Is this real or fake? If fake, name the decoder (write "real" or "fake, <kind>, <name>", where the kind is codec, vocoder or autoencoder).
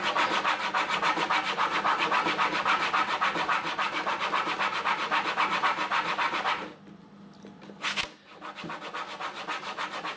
real